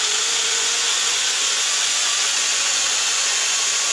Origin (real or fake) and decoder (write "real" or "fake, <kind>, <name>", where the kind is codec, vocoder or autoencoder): fake, vocoder, Vocos